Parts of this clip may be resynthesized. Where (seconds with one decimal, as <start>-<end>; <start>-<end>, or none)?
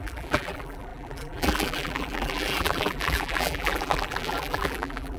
0.0-5.2